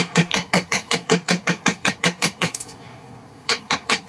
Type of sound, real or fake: fake